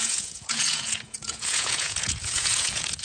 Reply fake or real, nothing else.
fake